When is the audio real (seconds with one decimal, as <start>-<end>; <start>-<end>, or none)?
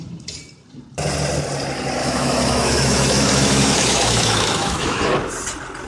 0.0-2.0; 5.0-5.9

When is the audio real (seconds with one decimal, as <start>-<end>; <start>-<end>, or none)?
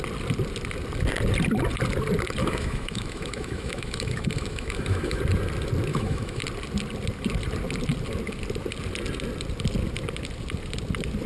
0.0-2.4; 5.2-5.9; 6.4-11.3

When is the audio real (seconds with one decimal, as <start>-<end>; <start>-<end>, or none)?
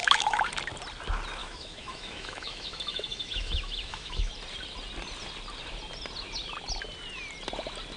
0.5-1.4; 4.3-8.0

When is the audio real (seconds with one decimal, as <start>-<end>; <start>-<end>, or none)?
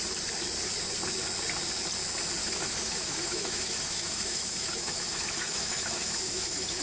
0.0-2.4